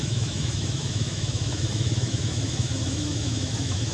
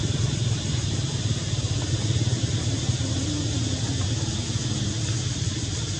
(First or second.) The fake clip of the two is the first